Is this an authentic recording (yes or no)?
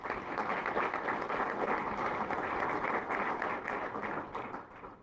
yes